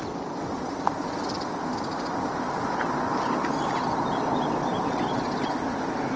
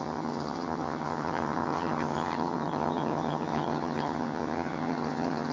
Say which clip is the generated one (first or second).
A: second